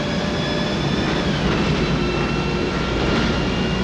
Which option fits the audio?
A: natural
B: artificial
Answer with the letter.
A